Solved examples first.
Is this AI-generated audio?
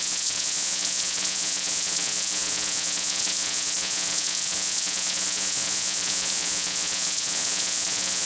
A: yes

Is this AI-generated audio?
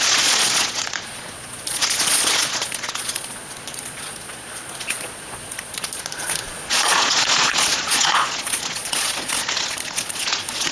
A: yes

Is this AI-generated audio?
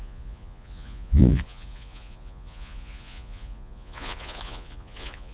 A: yes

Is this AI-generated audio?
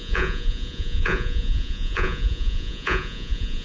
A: yes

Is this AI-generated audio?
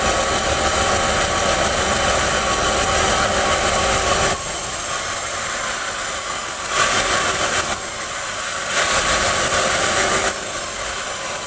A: no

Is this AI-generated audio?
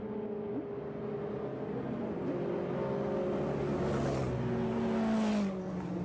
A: no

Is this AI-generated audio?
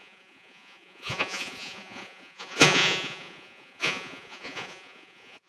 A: yes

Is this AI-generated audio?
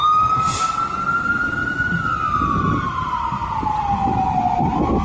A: no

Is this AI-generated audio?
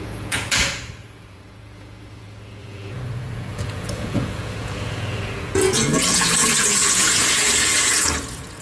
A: yes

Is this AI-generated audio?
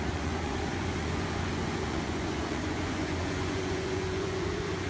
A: yes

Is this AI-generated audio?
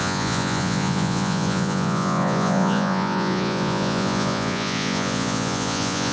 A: yes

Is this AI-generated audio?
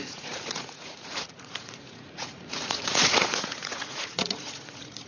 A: yes